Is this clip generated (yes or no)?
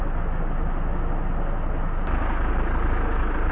no